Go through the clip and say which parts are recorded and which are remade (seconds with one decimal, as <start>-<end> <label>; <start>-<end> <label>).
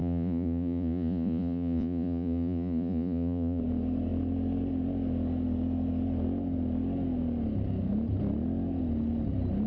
0.0-3.6 remade; 3.6-9.7 recorded